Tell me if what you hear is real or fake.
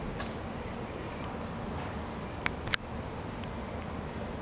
real